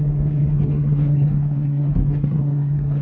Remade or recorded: remade